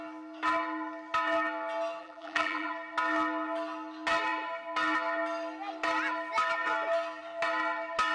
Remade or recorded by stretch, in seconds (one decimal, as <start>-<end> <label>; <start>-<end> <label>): 0.0-2.0 recorded; 2.0-2.7 remade; 2.7-8.1 recorded